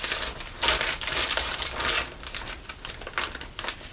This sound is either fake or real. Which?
real